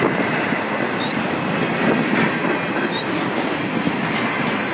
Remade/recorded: recorded